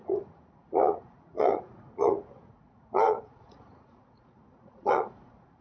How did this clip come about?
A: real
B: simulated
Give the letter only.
B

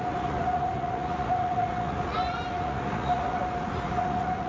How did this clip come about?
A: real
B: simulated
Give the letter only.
B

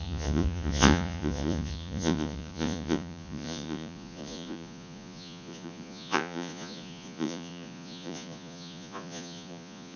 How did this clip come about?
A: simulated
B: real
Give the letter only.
A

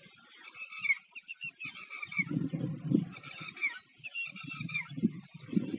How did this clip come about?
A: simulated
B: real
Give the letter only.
B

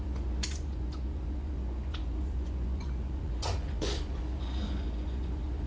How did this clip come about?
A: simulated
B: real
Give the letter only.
A